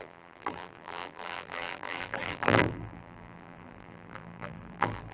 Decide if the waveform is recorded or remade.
remade